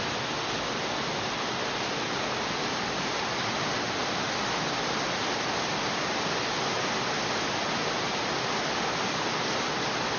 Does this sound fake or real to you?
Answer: real